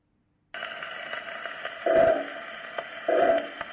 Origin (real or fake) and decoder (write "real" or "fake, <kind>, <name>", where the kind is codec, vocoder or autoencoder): real